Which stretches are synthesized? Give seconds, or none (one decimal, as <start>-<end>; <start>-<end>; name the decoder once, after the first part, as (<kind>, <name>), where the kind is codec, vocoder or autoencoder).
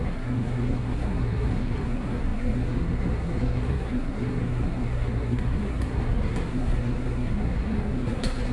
0.0-8.5 (codec, SNAC)